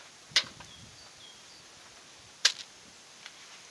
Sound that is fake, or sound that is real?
real